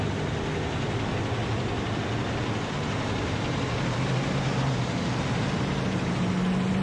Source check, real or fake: real